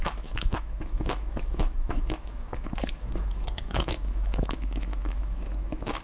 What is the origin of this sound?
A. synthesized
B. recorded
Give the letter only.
A